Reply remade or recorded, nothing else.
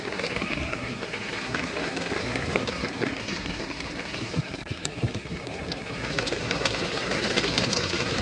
remade